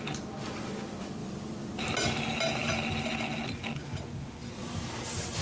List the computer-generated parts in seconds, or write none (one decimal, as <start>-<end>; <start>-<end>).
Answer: none